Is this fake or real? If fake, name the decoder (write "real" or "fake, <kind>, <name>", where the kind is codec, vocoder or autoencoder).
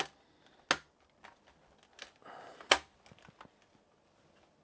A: real